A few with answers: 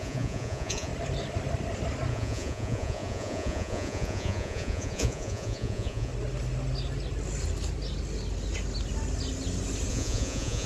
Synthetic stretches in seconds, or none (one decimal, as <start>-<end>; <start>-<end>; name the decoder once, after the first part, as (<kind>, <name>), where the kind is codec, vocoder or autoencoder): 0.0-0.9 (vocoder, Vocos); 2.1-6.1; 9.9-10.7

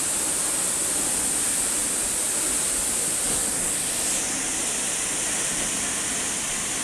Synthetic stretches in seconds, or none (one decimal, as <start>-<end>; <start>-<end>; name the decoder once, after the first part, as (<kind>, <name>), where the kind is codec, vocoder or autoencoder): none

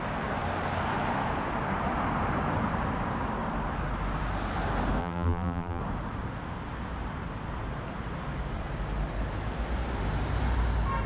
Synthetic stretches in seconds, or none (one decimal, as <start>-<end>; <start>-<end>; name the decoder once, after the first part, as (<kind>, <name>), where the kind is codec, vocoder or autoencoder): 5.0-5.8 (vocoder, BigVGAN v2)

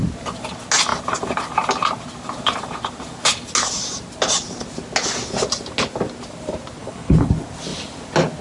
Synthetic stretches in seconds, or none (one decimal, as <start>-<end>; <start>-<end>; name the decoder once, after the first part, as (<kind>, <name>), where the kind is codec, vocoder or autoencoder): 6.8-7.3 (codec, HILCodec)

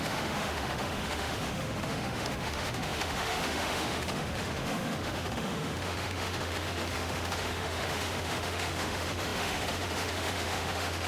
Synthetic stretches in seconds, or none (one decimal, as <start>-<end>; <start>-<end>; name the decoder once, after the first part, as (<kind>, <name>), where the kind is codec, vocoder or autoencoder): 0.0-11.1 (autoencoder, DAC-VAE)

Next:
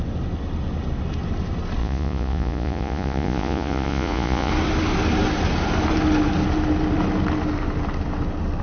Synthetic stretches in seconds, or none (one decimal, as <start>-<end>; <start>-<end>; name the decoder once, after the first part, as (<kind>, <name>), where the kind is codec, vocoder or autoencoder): 1.8-4.5 (vocoder, Vocos)

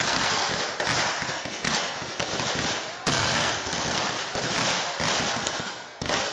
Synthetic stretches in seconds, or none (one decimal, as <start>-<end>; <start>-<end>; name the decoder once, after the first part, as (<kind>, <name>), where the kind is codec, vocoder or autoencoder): 0.0-0.5 (codec, SNAC); 1.3-2.3; 3.1-4.2; 5.3-6.3

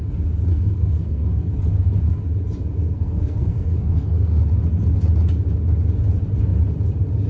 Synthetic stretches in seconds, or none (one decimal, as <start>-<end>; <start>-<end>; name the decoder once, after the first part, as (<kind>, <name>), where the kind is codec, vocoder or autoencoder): 0.5-1.5 (codec, SNAC); 2.8-4.4